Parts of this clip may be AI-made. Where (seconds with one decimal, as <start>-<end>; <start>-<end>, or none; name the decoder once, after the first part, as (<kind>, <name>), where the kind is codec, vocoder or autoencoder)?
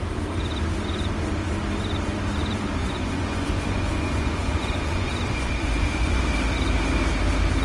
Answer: 2.8-6.2 (vocoder, Vocos)